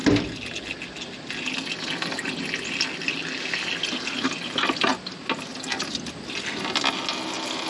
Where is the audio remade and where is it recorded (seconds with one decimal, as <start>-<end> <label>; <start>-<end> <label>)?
0.0-7.7 recorded